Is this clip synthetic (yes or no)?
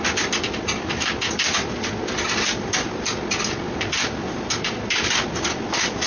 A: no